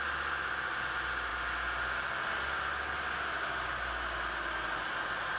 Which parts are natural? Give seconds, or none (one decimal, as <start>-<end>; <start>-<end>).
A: 0.0-5.4